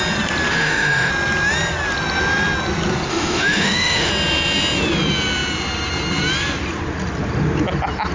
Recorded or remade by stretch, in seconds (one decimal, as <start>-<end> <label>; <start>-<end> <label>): 0.0-0.5 recorded; 0.5-1.1 remade; 1.1-3.1 recorded; 3.1-4.1 remade; 4.1-8.1 recorded